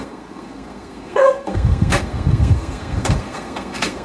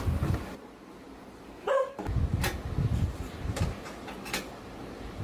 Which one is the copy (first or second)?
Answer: first